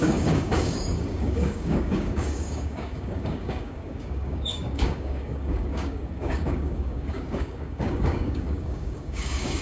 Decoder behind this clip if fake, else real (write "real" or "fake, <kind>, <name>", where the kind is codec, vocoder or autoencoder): fake, codec, DAC